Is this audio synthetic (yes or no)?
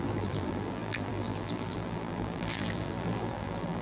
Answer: yes